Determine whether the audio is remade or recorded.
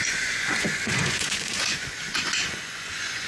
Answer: remade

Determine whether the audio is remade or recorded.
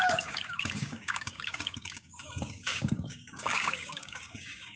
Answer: remade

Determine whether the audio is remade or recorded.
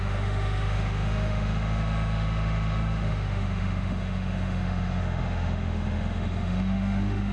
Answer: remade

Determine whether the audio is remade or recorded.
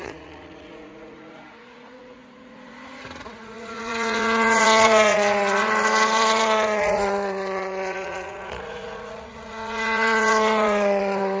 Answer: remade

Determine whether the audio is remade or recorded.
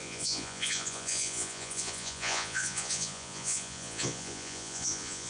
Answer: remade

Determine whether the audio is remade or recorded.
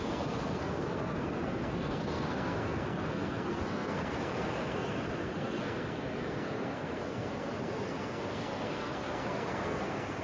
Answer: remade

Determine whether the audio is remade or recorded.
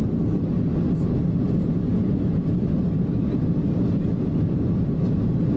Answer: recorded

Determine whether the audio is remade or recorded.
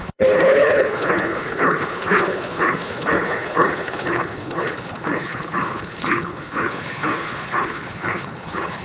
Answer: remade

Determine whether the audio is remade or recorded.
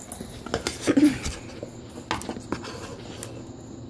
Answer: recorded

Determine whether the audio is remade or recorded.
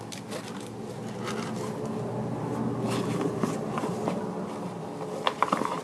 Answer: recorded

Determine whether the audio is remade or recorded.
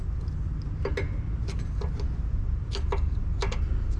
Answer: recorded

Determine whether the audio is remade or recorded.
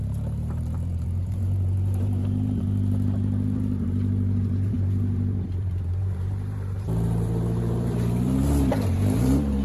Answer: remade